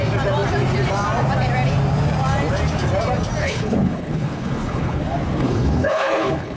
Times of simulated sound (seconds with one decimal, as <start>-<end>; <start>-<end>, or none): 3.4-5.0; 5.4-6.6